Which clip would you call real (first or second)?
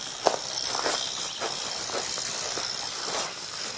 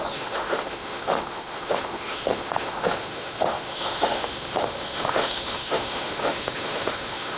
first